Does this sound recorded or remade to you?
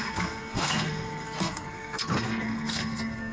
remade